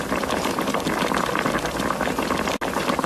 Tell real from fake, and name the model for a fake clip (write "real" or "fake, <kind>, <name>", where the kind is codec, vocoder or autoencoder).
real